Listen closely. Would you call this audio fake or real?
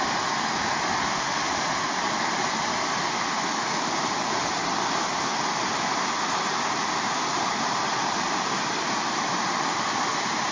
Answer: real